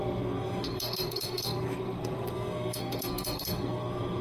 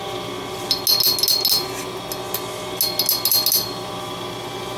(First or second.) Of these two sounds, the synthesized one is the first